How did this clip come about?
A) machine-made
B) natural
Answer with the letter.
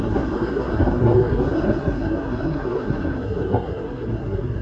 A